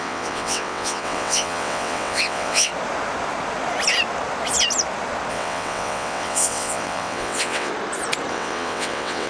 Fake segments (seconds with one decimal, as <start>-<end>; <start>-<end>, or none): 0.0-2.7; 5.3-7.7; 8.3-9.3